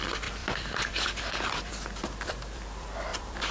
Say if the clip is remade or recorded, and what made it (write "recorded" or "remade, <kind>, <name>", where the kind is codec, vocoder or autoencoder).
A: remade, vocoder, BigVGAN v2